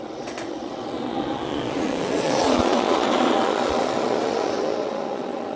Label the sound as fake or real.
fake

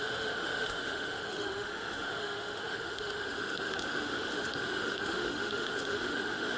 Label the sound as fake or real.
fake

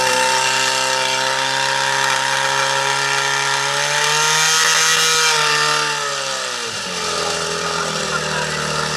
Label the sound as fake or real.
real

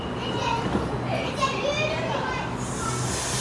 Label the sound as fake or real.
real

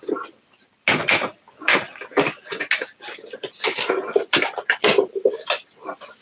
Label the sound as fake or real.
real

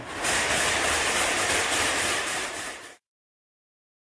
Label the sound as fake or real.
fake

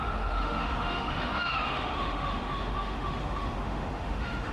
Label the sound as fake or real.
fake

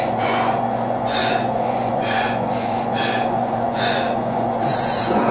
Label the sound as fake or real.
fake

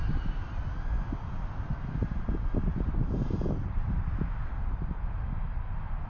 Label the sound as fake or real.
real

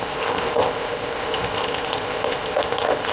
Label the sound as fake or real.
fake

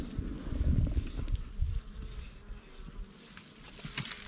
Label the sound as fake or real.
real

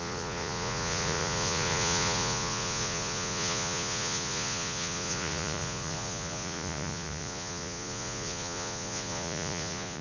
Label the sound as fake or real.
fake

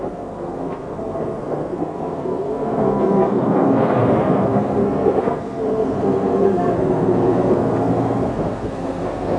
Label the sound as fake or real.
fake